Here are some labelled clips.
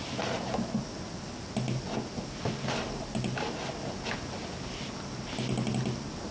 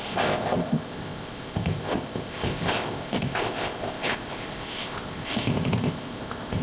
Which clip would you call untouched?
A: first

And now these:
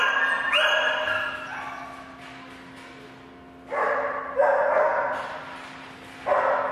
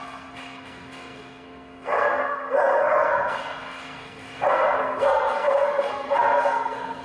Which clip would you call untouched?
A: first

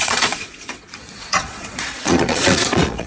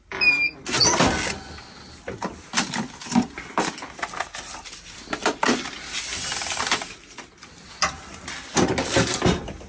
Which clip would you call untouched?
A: second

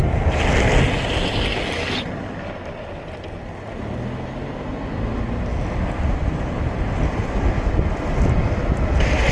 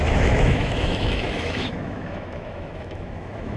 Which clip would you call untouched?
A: first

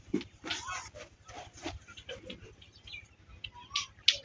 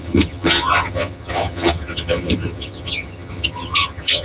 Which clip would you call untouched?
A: first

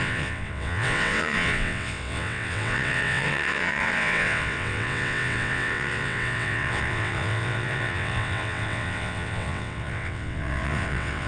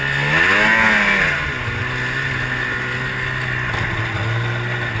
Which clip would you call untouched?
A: second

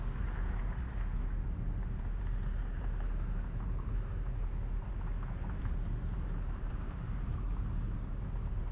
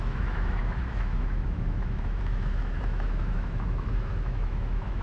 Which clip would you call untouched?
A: first